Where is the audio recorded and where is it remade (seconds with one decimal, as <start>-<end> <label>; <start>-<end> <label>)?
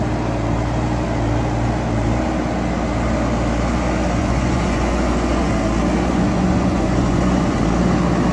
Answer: 0.0-4.2 recorded; 4.2-5.5 remade; 5.5-6.1 recorded; 6.1-7.6 remade; 7.6-8.3 recorded